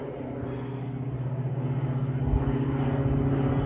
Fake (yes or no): no